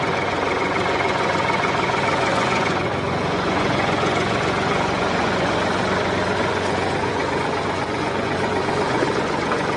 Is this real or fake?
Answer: fake